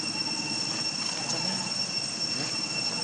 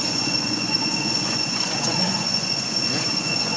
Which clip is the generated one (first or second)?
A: second